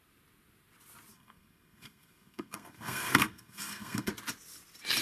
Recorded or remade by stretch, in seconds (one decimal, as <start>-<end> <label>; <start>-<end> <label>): 0.0-1.1 recorded; 1.1-4.1 remade; 4.1-5.0 recorded